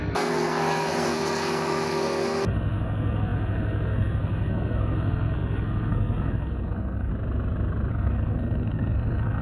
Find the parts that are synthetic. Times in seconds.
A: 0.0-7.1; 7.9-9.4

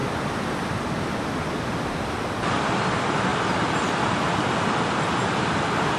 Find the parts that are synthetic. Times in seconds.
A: 1.2-6.0